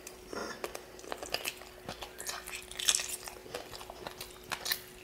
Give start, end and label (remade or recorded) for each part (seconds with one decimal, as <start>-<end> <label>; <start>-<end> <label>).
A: 0.0-5.0 recorded